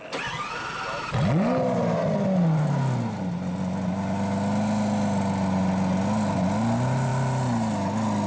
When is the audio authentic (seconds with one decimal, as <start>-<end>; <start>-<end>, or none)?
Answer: 0.0-8.3